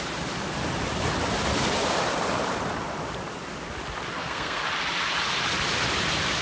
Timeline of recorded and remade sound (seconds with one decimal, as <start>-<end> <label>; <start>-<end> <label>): 0.0-4.1 recorded; 4.1-4.6 remade; 4.6-6.4 recorded